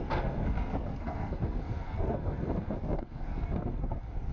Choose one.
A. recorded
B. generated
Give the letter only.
B